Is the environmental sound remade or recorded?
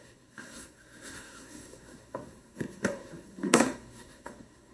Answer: remade